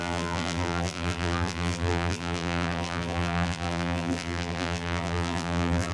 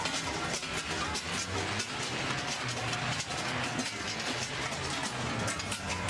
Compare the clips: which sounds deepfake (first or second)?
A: first